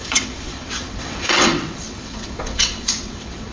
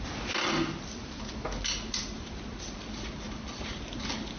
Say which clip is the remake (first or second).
first